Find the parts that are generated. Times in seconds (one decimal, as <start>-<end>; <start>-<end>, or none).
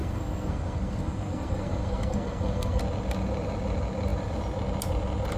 0.0-2.8